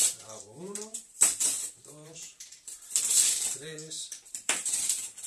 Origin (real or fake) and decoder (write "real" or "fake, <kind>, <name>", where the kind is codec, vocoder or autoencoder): fake, vocoder, BigVGAN v2